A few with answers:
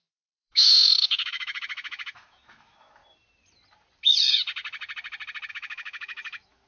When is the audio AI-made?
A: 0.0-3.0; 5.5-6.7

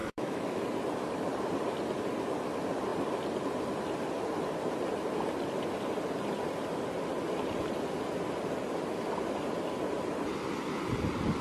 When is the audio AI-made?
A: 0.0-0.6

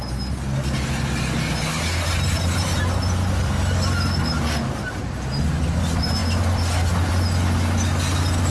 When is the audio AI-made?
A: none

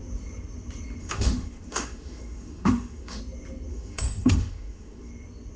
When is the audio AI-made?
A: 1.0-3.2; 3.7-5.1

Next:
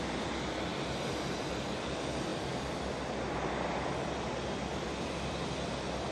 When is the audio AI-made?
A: none

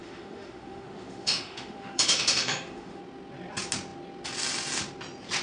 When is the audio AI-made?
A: 0.0-3.0

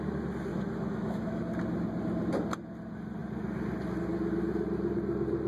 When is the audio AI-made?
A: 0.5-1.4

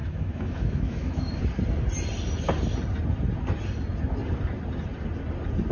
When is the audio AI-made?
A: 0.0-1.4